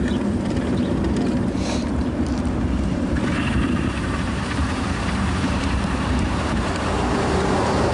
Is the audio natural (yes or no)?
no